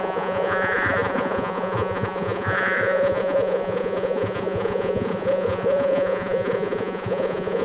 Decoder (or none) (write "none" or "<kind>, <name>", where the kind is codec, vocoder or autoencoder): vocoder, Vocos